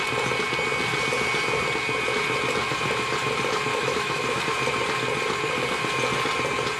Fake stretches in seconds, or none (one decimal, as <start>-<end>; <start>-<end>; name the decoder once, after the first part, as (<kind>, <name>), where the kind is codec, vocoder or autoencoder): 3.7-4.4 (autoencoder, DAC-VAE)